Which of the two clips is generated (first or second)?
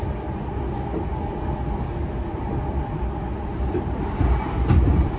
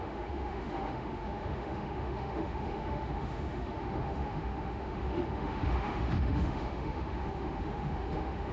second